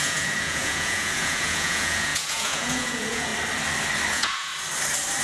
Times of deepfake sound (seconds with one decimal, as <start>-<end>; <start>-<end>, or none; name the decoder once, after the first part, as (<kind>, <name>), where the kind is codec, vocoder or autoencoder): 0.0-3.3 (vocoder, Vocos); 4.1-4.5